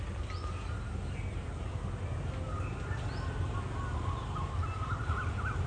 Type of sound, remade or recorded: recorded